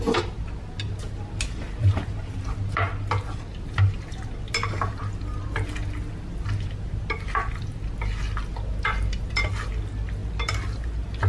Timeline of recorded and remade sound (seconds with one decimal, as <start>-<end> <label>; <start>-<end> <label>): 0.0-11.3 recorded